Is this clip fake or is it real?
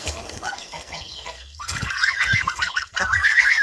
fake